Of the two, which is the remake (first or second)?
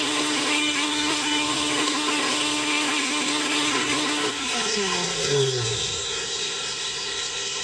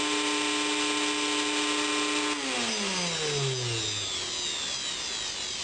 first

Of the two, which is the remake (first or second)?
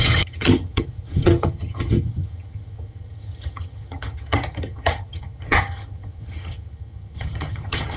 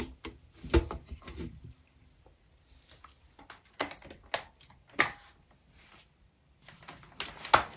first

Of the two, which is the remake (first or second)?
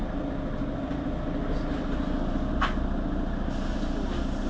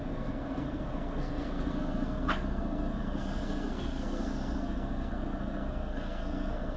second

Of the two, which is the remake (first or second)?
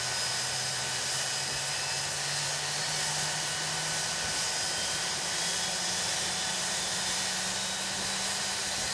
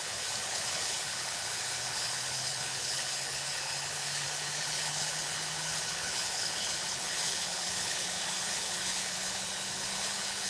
second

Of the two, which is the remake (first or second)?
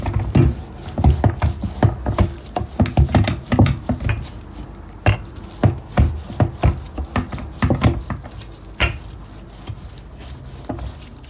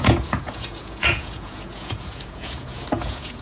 second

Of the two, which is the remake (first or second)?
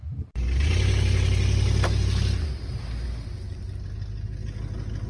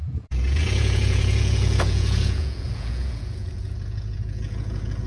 second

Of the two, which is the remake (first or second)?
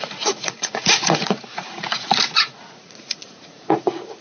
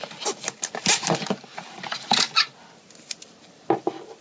first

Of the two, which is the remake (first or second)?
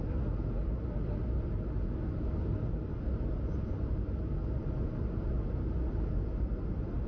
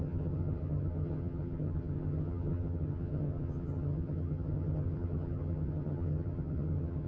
second